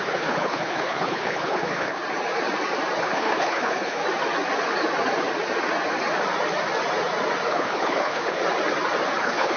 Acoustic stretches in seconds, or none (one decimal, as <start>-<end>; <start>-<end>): 2.0-3.0; 4.0-7.5; 8.4-9.2